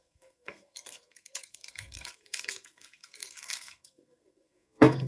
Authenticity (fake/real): fake